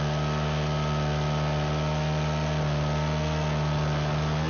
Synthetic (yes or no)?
no